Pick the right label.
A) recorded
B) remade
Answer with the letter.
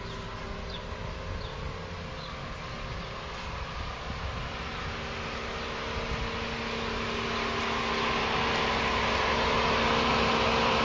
A